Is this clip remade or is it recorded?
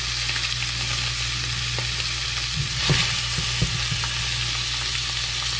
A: recorded